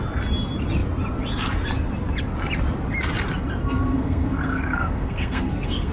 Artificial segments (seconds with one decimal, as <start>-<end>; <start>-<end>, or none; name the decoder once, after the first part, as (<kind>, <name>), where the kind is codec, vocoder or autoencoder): 3.6-5.9 (codec, SNAC)